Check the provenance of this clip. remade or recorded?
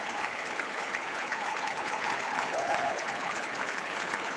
remade